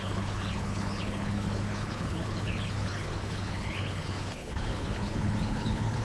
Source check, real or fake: fake